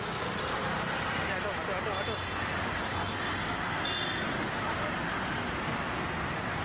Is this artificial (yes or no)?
no